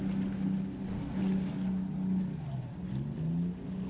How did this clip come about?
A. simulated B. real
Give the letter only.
B